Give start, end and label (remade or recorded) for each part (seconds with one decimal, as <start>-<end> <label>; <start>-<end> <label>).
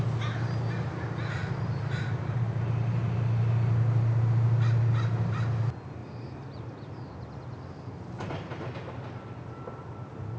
0.0-10.4 recorded